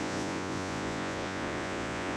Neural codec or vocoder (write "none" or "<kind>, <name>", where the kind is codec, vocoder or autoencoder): vocoder, Vocos